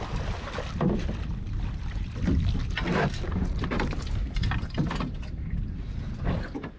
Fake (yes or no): no